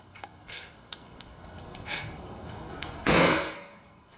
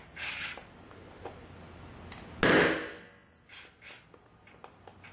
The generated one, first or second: first